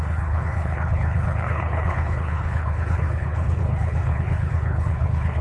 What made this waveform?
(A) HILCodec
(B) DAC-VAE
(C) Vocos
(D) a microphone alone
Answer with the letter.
A